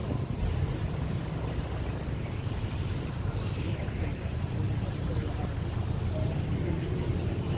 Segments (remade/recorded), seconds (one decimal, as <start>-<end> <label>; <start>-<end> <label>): 0.0-2.2 recorded; 2.2-5.4 remade; 5.4-7.6 recorded